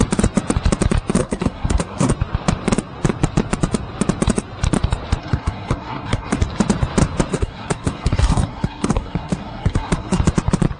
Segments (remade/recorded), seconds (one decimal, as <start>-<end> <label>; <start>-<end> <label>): 0.0-1.2 recorded; 1.2-2.1 remade; 2.1-5.2 recorded; 5.2-6.4 remade; 6.4-7.3 recorded; 7.3-10.2 remade; 10.2-10.8 recorded